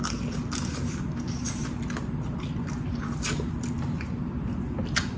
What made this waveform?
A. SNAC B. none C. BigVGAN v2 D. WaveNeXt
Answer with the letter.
B